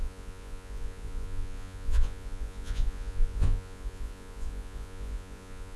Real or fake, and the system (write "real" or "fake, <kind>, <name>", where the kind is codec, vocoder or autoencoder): fake, vocoder, Vocos